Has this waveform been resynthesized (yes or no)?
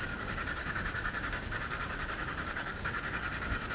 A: yes